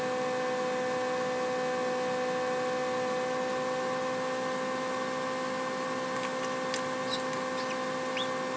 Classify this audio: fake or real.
real